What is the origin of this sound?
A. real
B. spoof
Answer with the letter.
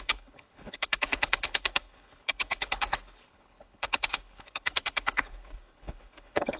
B